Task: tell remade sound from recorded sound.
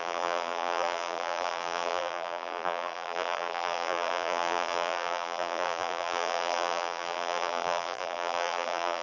remade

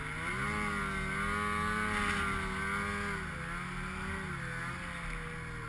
recorded